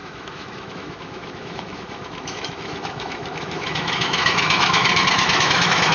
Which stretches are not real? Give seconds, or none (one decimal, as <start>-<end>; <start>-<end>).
0.0-5.9